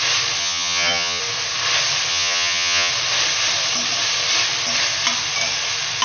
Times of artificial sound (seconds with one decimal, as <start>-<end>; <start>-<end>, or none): 0.4-1.2; 2.1-2.9